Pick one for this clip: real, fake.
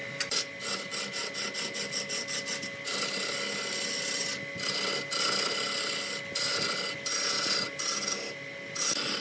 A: real